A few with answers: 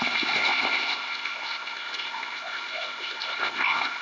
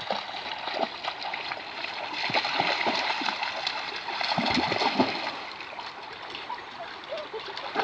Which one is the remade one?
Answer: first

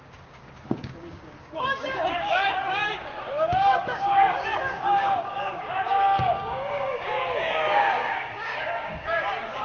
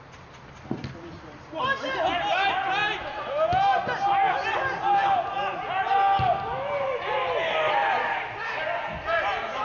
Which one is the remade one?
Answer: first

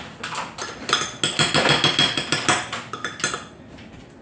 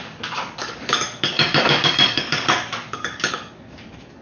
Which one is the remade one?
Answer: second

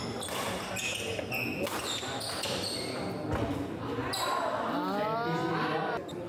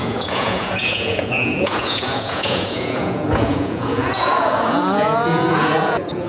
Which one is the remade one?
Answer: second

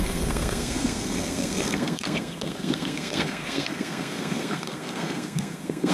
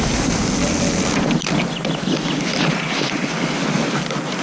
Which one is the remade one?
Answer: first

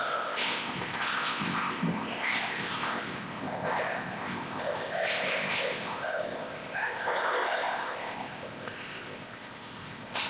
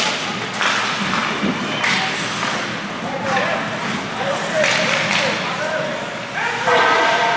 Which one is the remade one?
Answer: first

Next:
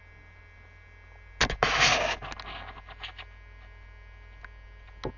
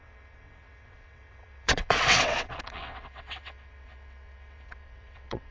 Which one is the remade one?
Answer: second